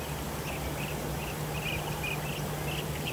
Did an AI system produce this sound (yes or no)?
no